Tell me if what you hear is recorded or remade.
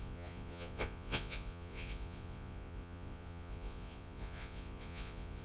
remade